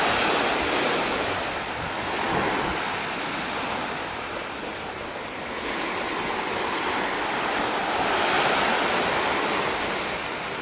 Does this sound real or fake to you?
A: real